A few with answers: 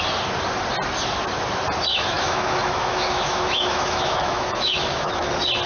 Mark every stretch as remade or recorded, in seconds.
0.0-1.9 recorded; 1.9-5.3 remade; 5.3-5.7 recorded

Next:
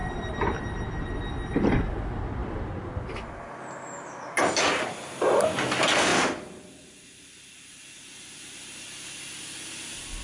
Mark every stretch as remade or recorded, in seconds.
0.0-10.2 recorded

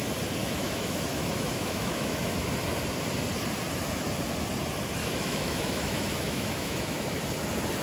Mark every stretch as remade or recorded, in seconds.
0.0-0.4 recorded; 0.4-2.5 remade; 2.5-5.0 recorded; 5.0-7.2 remade; 7.2-7.8 recorded